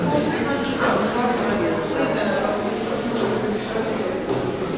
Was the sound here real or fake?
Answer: real